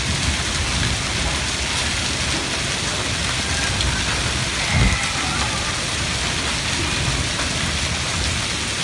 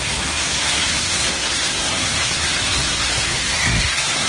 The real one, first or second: first